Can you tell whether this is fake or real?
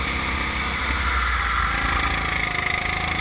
real